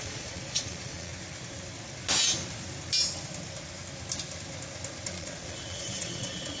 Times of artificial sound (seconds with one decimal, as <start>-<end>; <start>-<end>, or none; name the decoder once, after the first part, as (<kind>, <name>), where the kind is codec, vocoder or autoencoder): 0.0-1.1 (vocoder, Vocos); 5.1-6.6